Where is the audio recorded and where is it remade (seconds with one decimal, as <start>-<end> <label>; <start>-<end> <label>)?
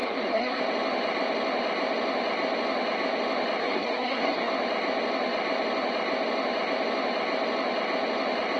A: 0.0-0.6 remade; 0.6-3.6 recorded; 3.6-4.5 remade; 4.5-8.6 recorded